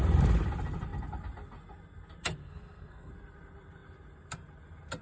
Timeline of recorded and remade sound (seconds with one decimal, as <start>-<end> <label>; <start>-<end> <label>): 0.0-2.4 recorded; 2.4-3.1 remade; 3.1-5.0 recorded